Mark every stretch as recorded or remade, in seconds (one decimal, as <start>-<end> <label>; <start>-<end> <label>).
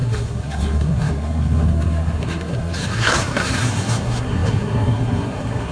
0.0-5.7 remade